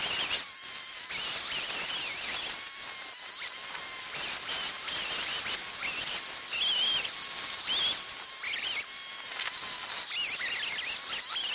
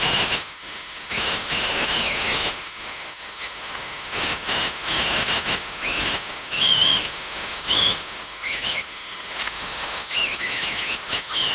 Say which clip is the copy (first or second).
second